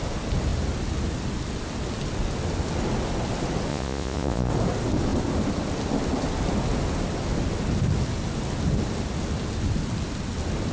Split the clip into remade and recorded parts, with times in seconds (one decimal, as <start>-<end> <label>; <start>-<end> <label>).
0.0-3.7 recorded; 3.7-4.5 remade; 4.5-10.7 recorded